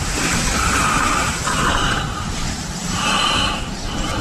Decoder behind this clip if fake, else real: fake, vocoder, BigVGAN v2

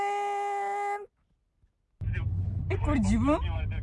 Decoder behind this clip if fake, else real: real